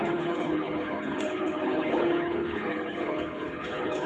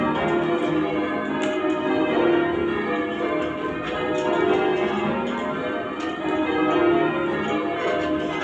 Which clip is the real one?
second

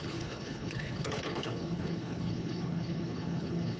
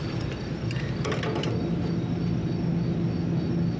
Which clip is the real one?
second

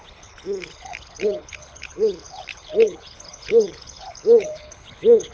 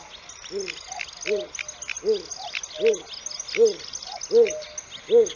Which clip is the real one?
second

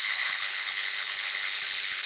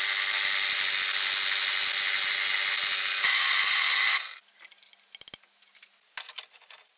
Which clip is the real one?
second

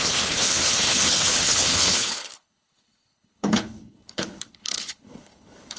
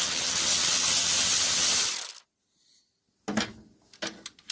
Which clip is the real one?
second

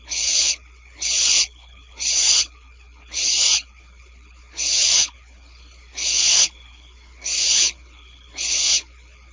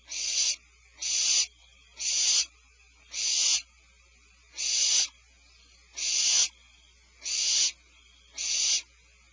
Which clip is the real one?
second